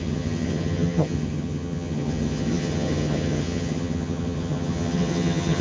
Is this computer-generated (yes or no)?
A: yes